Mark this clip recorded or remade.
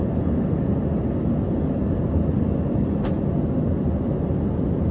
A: recorded